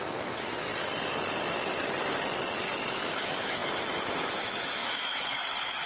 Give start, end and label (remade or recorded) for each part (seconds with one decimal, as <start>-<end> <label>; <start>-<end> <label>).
0.0-0.7 remade; 0.7-2.9 recorded; 2.9-5.9 remade